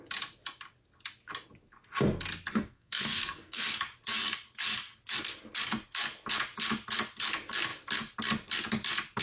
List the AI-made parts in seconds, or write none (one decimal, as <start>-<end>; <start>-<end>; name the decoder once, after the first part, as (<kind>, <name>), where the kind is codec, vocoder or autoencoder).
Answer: 2.5-3.6 (codec, SNAC)